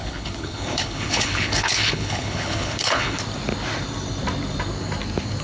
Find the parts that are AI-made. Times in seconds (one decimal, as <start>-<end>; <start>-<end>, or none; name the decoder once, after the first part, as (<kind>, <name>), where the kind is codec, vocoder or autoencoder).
0.0-3.2 (codec, HILCodec)